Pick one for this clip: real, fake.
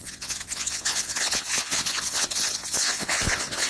fake